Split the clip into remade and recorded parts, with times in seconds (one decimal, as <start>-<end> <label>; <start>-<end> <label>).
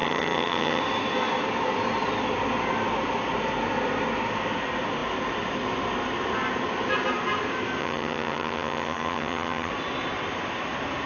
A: 0.0-0.8 remade; 0.8-7.8 recorded; 7.8-9.7 remade; 9.7-11.1 recorded